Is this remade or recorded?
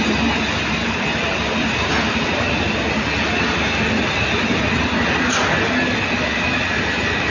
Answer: recorded